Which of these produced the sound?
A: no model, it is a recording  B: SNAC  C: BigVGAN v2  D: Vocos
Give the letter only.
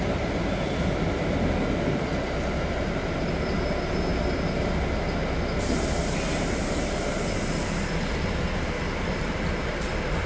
A